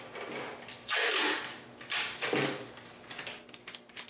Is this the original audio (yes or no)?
yes